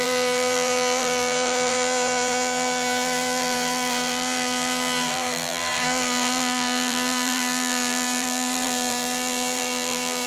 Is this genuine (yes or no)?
no